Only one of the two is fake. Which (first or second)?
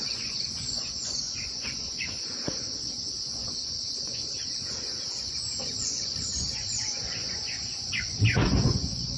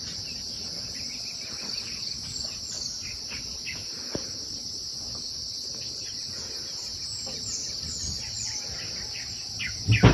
first